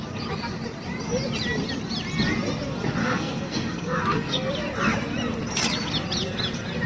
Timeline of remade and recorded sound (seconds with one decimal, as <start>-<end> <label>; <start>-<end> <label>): 0.0-3.0 recorded; 3.0-4.5 remade; 4.5-6.9 recorded